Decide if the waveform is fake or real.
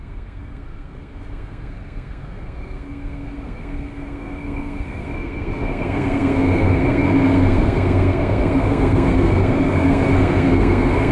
fake